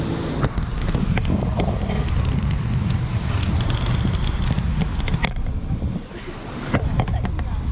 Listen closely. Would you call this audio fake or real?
real